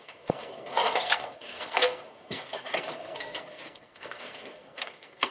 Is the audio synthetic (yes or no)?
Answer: yes